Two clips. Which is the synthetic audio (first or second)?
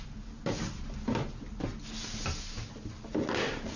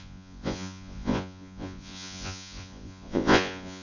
second